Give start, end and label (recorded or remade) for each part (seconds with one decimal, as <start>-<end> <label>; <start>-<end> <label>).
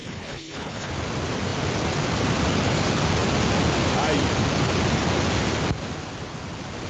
0.0-0.9 remade; 0.9-6.9 recorded